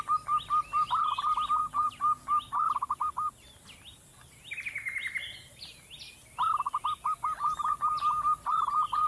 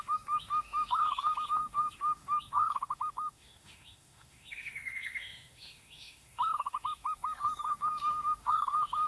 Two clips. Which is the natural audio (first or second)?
first